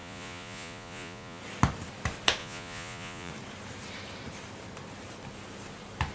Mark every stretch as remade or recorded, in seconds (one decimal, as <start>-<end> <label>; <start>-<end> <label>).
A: 0.0-1.4 remade; 1.4-2.4 recorded; 2.4-3.3 remade; 3.3-6.1 recorded